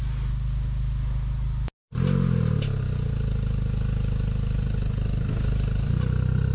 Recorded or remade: recorded